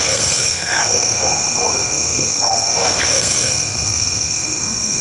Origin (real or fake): fake